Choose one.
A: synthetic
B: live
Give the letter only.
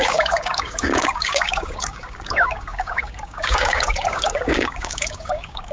A